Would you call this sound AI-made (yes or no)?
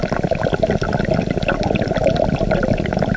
no